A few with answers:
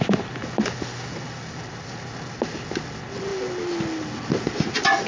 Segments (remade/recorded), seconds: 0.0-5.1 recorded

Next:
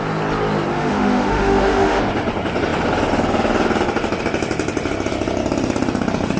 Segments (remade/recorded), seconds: 0.0-0.7 recorded; 0.7-2.0 remade; 2.0-6.4 recorded

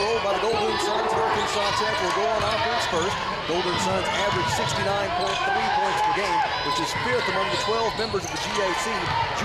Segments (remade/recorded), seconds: 0.0-5.3 recorded; 5.3-6.4 remade; 6.4-9.4 recorded

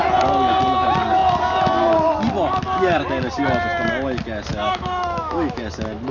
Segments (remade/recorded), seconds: 0.0-4.5 recorded; 4.5-5.6 remade; 5.6-6.1 recorded

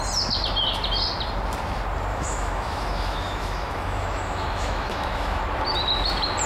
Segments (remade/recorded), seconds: 0.0-2.1 recorded; 2.1-5.4 remade; 5.4-6.5 recorded